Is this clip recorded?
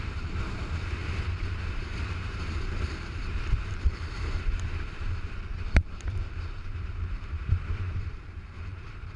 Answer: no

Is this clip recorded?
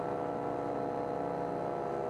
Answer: yes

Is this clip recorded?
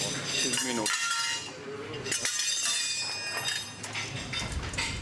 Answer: yes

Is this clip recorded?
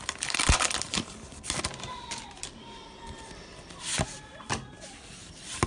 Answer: no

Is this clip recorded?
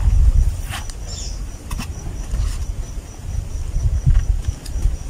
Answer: yes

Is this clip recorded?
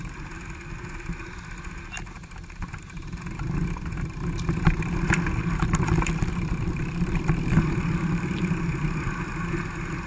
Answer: yes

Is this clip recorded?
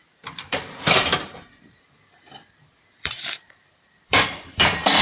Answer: no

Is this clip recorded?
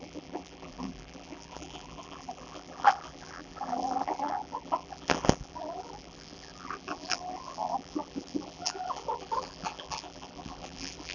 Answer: no